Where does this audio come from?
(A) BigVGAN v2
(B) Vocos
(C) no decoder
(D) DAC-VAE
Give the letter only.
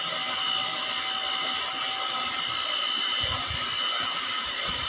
C